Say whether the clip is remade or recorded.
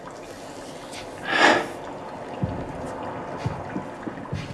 recorded